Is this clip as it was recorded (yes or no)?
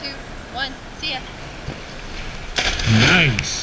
yes